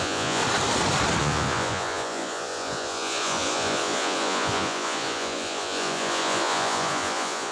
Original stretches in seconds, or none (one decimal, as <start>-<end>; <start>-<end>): 0.4-1.2